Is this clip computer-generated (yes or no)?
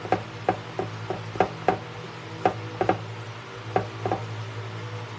no